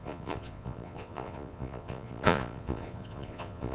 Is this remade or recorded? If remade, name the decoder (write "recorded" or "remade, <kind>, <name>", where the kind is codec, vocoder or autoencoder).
remade, vocoder, Vocos